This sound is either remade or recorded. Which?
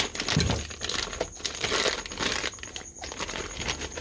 recorded